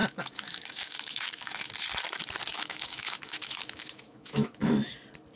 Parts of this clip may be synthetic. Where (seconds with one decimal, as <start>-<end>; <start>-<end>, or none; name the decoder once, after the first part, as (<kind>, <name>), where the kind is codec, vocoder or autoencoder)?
0.0-1.7 (autoencoder, DAC-VAE); 2.5-4.9